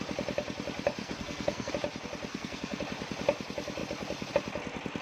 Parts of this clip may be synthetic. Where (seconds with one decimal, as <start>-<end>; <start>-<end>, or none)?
1.0-1.7; 2.3-2.8